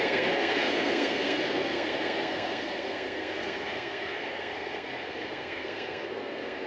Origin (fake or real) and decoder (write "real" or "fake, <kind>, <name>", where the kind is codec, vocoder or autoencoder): fake, codec, SNAC